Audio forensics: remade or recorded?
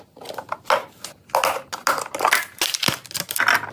recorded